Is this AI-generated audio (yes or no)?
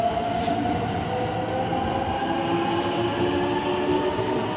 no